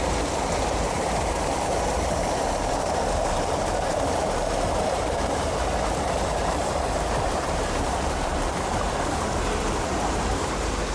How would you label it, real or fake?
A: fake